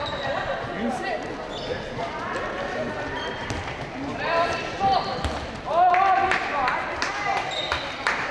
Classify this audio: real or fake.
fake